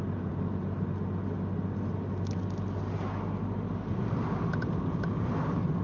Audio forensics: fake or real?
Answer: real